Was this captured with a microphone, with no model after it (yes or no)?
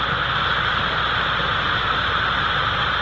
yes